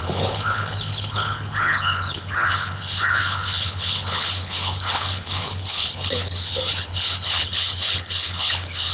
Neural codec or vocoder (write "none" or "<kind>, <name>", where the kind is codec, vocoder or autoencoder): codec, HILCodec